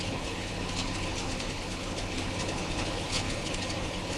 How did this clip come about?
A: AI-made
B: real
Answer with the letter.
A